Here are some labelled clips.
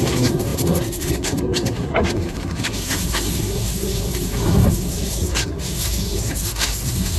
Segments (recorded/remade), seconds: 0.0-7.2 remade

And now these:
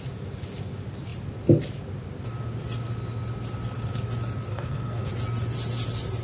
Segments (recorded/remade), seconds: 0.0-4.5 recorded; 4.5-5.1 remade; 5.1-6.2 recorded

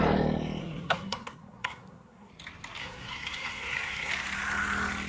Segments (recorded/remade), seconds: 0.0-0.6 recorded; 0.6-2.3 remade; 2.3-2.8 recorded; 2.8-4.1 remade; 4.1-5.1 recorded

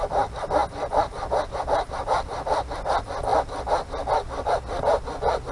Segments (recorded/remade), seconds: 0.0-5.5 recorded

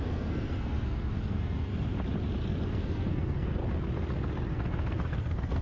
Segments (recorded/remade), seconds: 0.0-1.7 remade; 1.7-2.5 recorded; 2.5-3.6 remade; 3.6-4.5 recorded; 4.5-5.6 remade

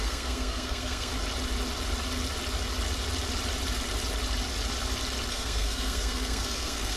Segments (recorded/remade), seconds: 0.0-1.1 remade; 1.1-5.3 recorded; 5.3-7.0 remade

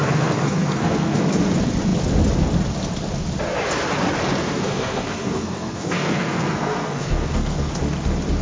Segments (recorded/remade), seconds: 0.0-1.2 remade; 1.2-4.4 recorded; 4.4-7.7 remade; 7.7-8.4 recorded

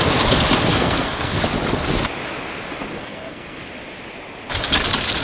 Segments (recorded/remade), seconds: 0.0-0.7 recorded; 0.7-1.4 remade; 1.4-3.0 recorded; 3.0-3.6 remade; 3.6-5.2 recorded